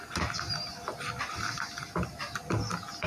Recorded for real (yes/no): yes